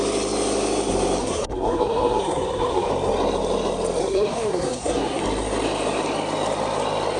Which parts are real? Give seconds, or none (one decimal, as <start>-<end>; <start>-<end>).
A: 0.0-1.2; 2.9-4.0; 5.2-7.2